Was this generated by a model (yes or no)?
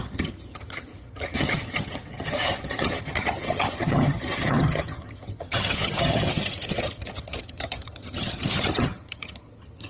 yes